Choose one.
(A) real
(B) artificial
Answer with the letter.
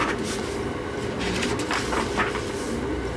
A